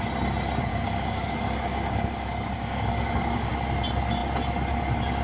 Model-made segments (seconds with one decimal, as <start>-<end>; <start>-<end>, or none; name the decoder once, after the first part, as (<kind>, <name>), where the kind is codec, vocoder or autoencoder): 0.7-3.5 (codec, DAC)